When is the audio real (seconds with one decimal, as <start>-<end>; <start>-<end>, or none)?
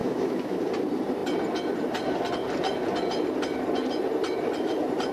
0.7-5.1